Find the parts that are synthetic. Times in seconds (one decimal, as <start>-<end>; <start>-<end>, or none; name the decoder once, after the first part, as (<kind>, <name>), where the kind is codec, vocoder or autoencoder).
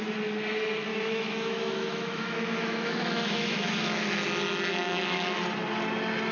0.9-4.2 (autoencoder, DAC-VAE); 4.7-5.4